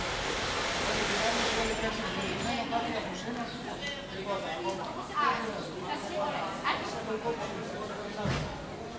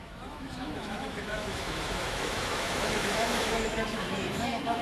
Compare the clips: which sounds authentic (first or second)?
first